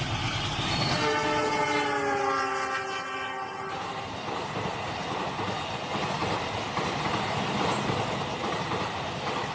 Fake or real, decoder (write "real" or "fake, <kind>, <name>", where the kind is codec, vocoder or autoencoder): real